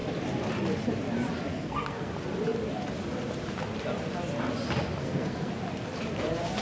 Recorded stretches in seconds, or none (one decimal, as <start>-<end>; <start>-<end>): 0.0-1.5; 2.1-5.0; 5.5-6.6